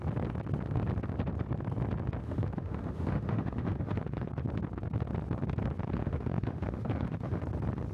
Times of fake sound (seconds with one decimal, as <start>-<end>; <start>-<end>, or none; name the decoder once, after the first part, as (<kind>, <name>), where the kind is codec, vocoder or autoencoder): 2.2-4.3 (autoencoder, DAC-VAE); 5.8-7.4

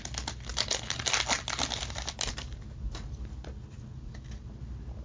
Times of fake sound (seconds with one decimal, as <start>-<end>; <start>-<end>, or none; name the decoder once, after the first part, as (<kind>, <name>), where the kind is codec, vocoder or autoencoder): none

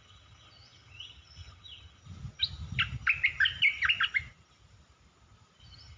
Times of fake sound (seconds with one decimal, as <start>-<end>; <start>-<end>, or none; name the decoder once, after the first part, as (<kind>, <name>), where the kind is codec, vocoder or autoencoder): 0.0-2.0 (vocoder, HiFi-GAN); 5.6-6.0

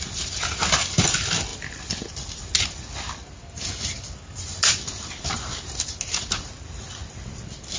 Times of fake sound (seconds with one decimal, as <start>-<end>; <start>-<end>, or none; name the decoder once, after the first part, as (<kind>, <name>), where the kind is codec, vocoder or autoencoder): none

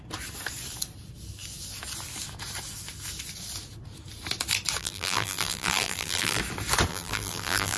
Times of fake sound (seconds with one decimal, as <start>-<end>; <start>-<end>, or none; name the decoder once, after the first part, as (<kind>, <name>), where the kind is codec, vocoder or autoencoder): 4.8-6.4 (vocoder, BigVGAN v2); 6.9-7.8

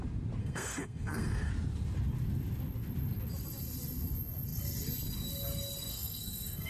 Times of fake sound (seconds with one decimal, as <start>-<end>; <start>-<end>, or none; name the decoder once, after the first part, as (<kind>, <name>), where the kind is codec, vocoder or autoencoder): 0.4-1.5 (codec, SNAC); 5.9-6.7

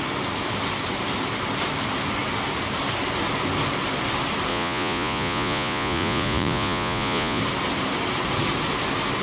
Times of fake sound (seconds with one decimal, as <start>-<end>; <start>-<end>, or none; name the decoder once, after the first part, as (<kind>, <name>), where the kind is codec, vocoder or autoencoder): 4.5-7.4 (vocoder, Vocos)